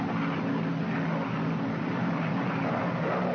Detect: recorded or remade recorded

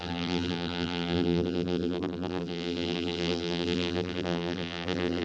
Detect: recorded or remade remade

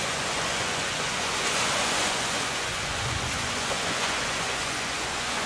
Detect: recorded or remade remade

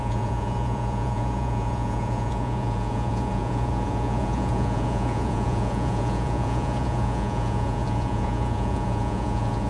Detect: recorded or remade remade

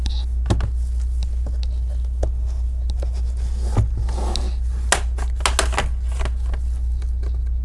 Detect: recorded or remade recorded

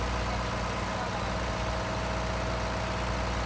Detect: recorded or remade recorded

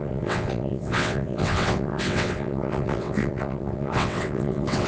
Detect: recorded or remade remade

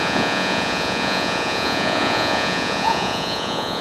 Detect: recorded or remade remade